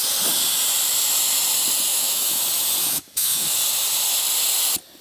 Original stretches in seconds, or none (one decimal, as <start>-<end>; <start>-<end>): 0.0-1.9; 2.4-2.8; 3.5-5.0